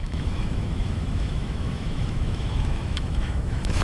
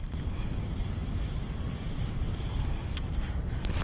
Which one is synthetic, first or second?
first